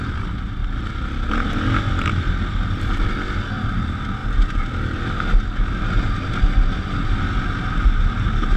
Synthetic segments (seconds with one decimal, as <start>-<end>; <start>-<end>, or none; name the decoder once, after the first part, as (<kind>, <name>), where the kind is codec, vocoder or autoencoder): none